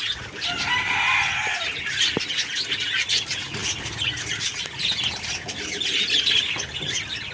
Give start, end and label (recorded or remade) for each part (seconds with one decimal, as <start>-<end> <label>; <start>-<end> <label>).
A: 0.0-7.3 recorded